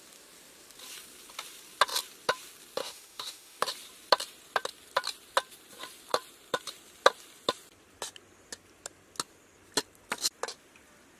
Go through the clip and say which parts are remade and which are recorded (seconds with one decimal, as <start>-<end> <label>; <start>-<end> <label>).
0.0-2.8 recorded; 2.8-3.6 remade; 3.6-11.2 recorded